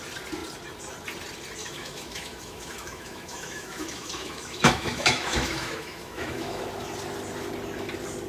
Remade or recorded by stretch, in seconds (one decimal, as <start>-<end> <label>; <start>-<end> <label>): 0.0-1.6 recorded; 1.6-6.6 remade; 6.6-8.3 recorded